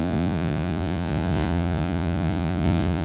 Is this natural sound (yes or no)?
no